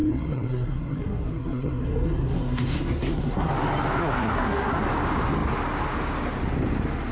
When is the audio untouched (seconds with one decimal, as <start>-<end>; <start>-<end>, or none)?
3.5-4.0; 4.8-7.1